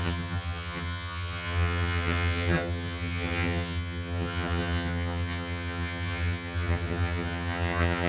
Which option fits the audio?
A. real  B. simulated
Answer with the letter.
B